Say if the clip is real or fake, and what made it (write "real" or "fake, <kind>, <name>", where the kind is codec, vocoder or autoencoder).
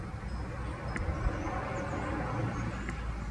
real